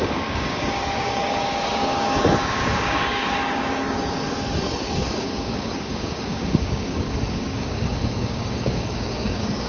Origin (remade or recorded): remade